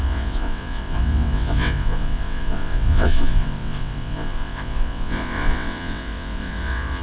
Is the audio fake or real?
fake